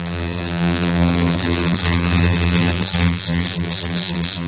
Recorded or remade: remade